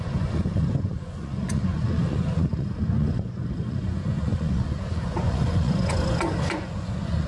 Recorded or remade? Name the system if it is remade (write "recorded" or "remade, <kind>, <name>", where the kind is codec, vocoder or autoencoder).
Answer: remade, vocoder, Vocos